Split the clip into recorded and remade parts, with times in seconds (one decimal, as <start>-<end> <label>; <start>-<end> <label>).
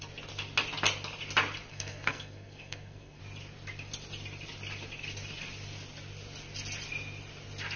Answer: 0.0-1.7 recorded; 1.7-3.2 remade; 3.2-7.8 recorded